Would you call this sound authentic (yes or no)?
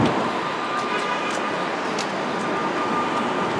yes